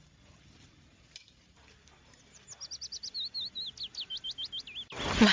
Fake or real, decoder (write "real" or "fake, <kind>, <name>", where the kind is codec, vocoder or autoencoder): real